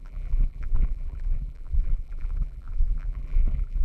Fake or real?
fake